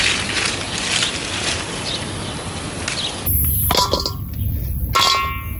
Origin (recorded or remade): recorded